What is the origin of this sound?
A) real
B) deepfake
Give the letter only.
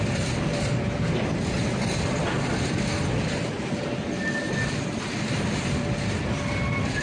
A